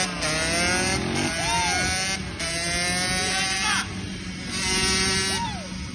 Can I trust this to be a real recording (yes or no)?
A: yes